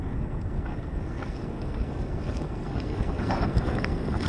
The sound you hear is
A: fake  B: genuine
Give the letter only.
A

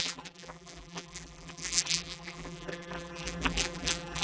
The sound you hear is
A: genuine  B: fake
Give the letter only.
B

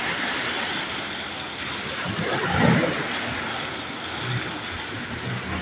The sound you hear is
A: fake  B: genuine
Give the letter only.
B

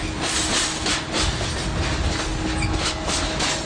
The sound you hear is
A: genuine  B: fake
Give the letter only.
A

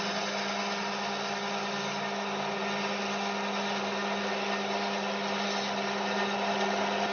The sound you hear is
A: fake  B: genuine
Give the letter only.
B